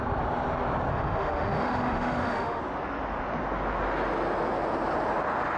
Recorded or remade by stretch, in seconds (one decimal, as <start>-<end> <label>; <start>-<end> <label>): 0.0-0.9 recorded; 0.9-2.6 remade; 2.6-5.6 recorded